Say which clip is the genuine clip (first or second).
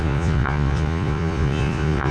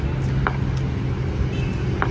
second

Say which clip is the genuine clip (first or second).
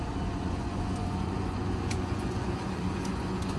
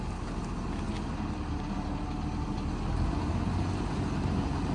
second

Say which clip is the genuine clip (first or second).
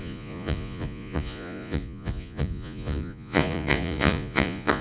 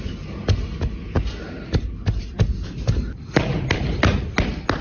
second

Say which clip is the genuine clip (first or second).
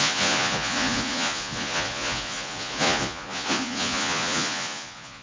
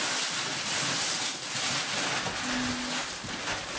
second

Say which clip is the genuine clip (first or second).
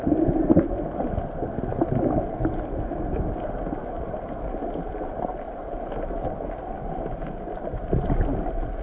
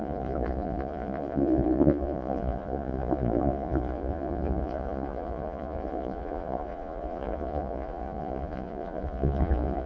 first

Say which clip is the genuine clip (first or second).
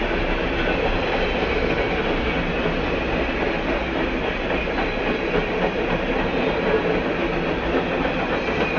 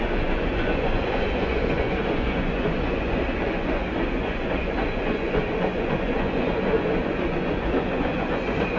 first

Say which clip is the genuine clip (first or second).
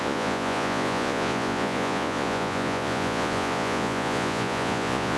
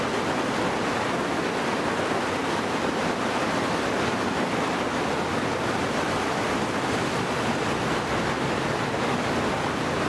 second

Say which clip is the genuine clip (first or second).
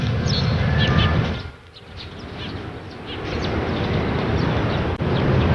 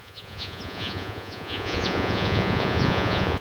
first